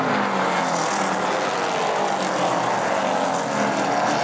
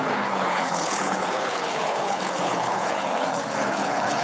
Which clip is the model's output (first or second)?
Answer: second